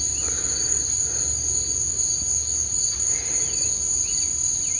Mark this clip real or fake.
real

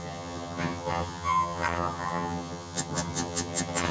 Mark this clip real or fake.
fake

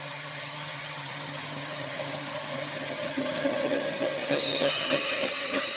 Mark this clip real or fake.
fake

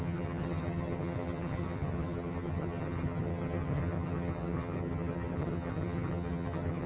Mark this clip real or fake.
fake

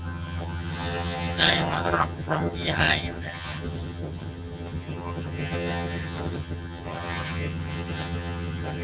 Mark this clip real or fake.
fake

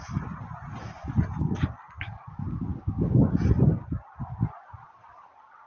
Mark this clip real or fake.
real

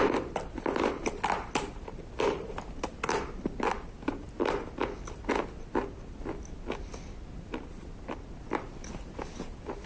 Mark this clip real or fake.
real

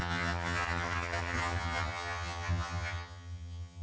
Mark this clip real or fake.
fake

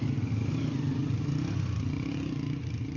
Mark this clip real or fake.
real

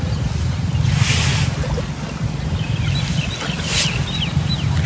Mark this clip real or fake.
real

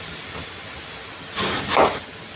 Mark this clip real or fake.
real